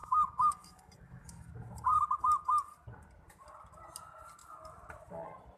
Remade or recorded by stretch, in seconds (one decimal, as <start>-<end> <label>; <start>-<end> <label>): 0.0-1.5 remade; 1.5-5.6 recorded